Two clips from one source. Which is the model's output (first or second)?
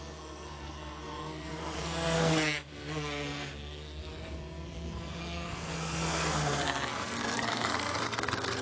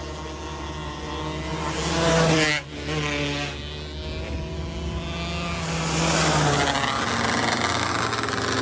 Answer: first